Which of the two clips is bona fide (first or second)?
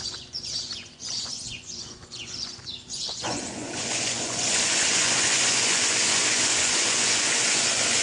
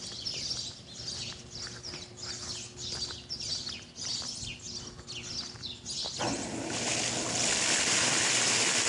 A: second